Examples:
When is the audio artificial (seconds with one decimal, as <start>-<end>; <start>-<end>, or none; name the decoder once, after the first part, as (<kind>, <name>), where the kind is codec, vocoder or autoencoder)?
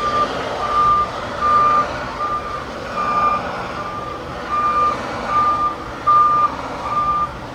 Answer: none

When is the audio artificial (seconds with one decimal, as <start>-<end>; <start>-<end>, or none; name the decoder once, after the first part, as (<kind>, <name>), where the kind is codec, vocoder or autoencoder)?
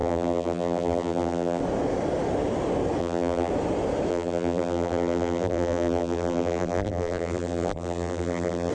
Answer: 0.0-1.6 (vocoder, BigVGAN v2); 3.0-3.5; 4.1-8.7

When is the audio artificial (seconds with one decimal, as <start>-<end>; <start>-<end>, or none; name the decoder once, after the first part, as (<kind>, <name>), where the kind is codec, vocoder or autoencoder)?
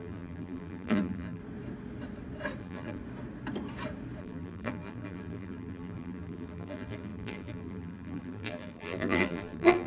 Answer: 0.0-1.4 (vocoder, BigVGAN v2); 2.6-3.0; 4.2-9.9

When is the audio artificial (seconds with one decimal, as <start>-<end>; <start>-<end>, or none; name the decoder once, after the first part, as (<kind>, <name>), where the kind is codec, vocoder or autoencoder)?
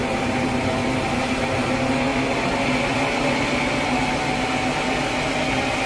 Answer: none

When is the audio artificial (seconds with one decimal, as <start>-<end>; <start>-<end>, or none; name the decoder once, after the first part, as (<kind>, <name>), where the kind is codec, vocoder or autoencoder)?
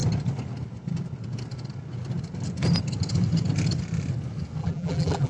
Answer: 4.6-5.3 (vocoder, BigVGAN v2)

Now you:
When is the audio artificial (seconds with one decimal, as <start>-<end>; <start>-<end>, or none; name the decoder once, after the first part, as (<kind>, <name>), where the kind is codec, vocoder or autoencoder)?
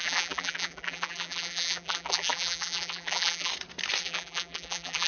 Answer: 0.0-3.5 (vocoder, BigVGAN v2); 4.0-5.1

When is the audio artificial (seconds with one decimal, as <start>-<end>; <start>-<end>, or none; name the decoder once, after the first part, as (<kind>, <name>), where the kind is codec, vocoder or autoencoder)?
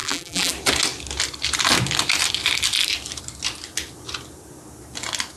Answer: 0.0-0.5 (vocoder, BigVGAN v2)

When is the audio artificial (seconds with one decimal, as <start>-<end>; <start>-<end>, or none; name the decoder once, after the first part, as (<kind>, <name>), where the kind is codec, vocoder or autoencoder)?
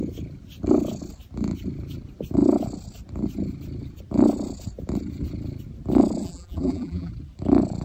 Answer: 6.2-7.1 (vocoder, BigVGAN v2)